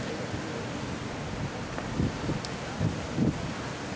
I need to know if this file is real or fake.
real